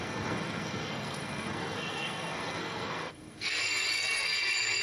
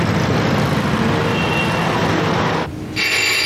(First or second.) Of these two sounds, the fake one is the first